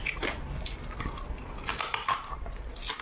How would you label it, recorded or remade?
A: recorded